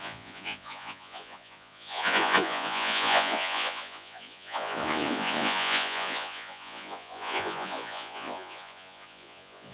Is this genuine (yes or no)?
no